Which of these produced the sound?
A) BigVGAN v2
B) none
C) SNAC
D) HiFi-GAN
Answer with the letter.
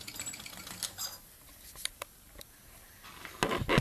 B